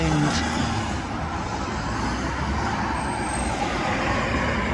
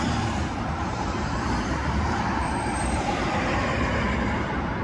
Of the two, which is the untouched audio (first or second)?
first